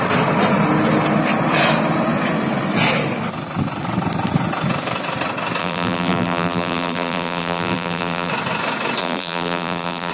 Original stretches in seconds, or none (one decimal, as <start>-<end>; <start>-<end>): 0.0-5.6; 8.3-9.0